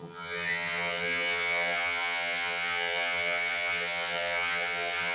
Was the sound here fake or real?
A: fake